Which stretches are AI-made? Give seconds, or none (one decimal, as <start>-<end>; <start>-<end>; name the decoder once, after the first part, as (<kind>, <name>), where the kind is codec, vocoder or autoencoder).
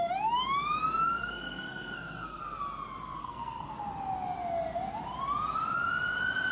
1.2-2.4 (codec, SNAC); 3.2-3.7